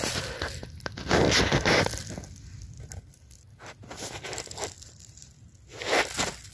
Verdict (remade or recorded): recorded